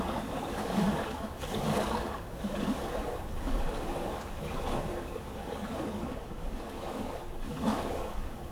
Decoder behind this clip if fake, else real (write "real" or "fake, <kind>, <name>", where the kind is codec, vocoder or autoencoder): fake, codec, DAC